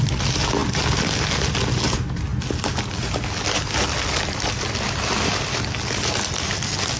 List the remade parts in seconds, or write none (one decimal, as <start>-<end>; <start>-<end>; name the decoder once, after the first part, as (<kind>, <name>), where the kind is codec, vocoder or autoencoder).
none